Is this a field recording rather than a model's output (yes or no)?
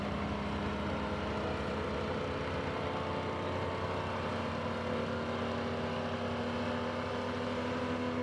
yes